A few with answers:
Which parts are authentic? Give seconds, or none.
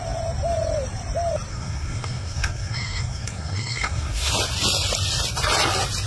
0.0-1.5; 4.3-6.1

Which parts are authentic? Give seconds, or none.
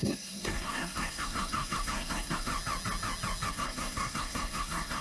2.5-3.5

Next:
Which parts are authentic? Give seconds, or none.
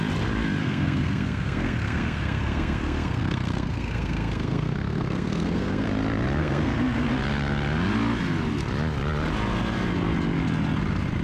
0.0-0.6; 5.9-6.4; 7.1-11.2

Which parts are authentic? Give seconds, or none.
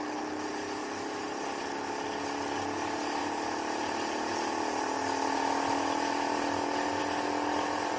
0.0-8.0